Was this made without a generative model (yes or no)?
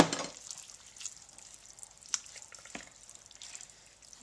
yes